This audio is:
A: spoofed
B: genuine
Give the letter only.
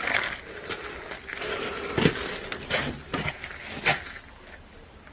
B